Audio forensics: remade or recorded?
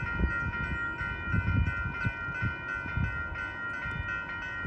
recorded